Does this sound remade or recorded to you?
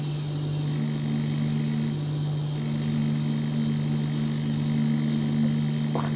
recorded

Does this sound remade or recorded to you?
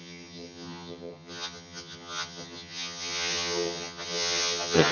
remade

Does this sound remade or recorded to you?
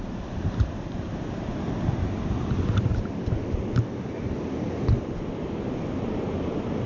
recorded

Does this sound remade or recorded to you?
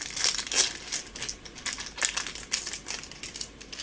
recorded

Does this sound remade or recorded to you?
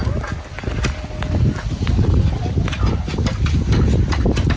recorded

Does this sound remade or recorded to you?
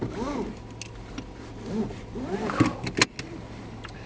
recorded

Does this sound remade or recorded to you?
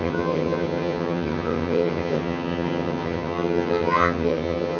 remade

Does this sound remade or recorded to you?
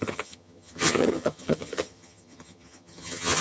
remade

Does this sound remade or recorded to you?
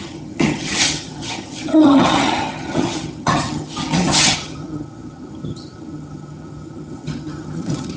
remade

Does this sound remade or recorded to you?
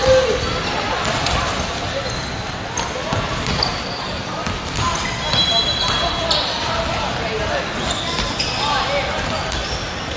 recorded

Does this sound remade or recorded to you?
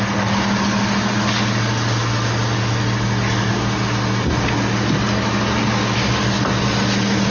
recorded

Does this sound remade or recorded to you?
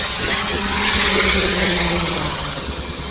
remade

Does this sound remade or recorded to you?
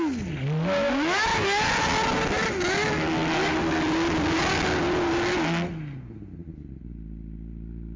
recorded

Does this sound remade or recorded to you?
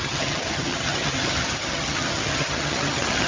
remade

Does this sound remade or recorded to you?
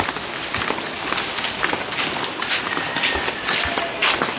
recorded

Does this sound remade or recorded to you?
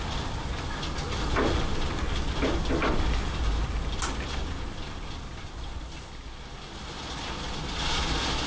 recorded